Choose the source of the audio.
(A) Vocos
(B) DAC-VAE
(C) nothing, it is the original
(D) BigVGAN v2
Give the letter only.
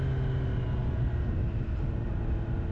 C